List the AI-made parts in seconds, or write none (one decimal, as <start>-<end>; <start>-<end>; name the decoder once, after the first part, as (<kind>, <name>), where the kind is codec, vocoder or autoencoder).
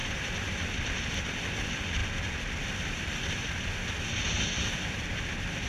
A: none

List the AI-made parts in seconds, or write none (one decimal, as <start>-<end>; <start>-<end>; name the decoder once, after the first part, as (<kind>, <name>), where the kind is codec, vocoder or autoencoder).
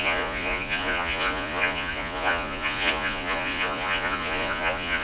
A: 0.0-5.0 (vocoder, Vocos)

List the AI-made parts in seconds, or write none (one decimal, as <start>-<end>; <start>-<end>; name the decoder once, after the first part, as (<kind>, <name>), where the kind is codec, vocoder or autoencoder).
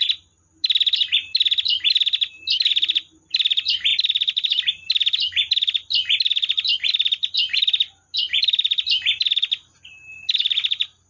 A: none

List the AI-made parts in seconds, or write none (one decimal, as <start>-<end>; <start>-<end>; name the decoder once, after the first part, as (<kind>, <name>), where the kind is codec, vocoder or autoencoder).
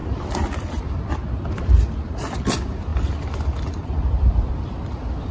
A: none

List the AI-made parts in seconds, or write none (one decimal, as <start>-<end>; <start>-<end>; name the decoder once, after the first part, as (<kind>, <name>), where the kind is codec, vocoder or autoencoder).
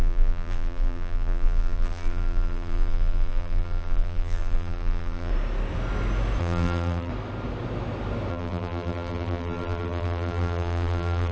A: 0.0-5.3 (vocoder, BigVGAN v2); 6.4-7.1; 8.3-11.3